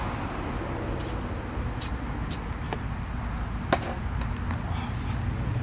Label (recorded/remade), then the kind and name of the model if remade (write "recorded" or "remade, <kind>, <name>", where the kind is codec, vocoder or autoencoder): recorded